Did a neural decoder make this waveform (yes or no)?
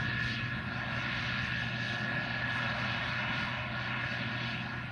no